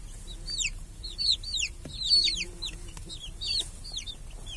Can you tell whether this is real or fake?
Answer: fake